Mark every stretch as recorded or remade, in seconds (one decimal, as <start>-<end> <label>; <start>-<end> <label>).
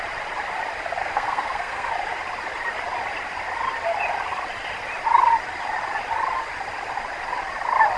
0.0-1.0 recorded; 1.0-1.9 remade; 1.9-8.0 recorded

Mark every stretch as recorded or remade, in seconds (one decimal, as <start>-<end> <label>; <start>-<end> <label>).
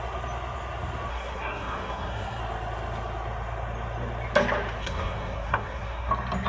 0.0-1.1 recorded; 1.1-2.4 remade; 2.4-4.8 recorded; 4.8-6.1 remade; 6.1-6.5 recorded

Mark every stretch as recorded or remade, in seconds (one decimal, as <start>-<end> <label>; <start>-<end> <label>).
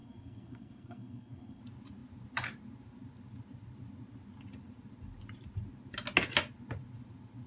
0.0-1.6 remade; 1.6-7.5 recorded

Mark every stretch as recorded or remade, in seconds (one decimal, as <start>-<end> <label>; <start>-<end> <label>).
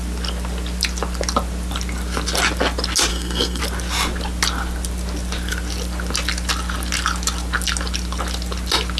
0.0-3.1 recorded; 3.1-3.6 remade; 3.6-9.0 recorded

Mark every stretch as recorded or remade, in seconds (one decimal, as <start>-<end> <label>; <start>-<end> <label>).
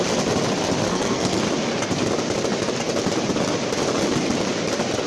0.0-0.9 recorded; 0.9-1.4 remade; 1.4-5.1 recorded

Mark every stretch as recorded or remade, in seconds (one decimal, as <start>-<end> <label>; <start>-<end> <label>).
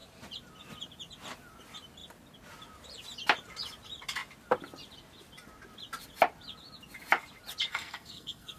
0.0-7.7 recorded; 7.7-8.6 remade